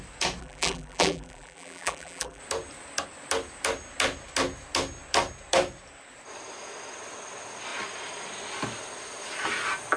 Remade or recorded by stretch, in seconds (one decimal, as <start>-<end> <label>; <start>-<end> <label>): 0.0-0.4 recorded; 0.4-2.4 remade; 2.4-10.0 recorded